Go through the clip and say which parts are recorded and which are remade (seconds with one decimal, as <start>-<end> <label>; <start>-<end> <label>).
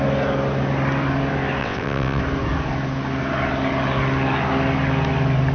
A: 0.0-1.6 recorded; 1.6-2.2 remade; 2.2-5.5 recorded